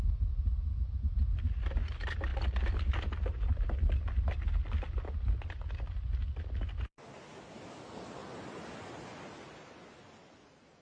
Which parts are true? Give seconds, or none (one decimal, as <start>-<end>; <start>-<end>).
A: 0.0-10.8